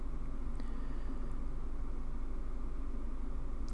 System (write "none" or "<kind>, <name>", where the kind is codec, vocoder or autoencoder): none